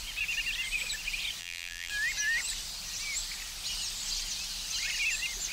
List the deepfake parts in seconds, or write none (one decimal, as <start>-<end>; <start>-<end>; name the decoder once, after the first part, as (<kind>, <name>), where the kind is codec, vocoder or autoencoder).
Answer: 1.4-1.9 (vocoder, BigVGAN v2)